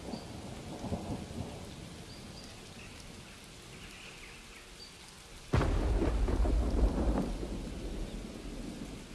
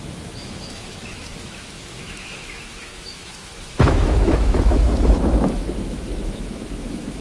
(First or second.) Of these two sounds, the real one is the first